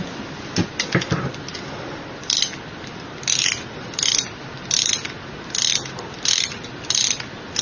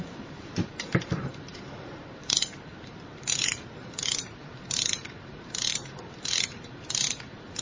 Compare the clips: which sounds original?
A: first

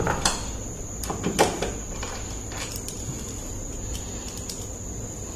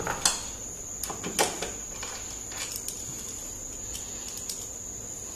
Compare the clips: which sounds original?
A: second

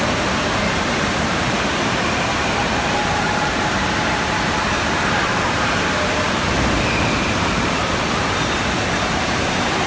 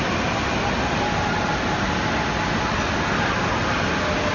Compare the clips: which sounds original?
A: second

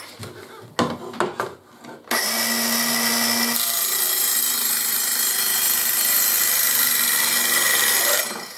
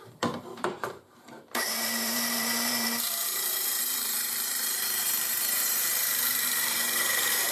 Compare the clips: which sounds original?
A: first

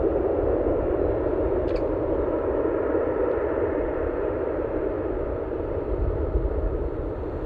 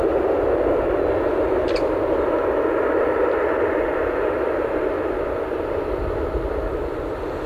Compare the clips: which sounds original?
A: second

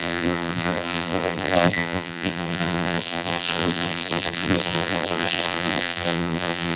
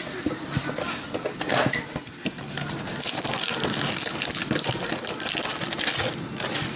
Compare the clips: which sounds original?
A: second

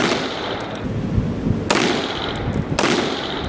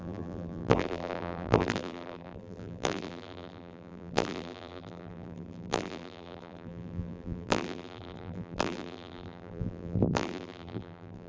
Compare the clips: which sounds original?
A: first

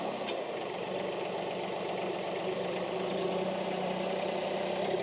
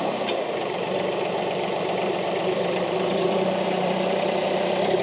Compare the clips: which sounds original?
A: first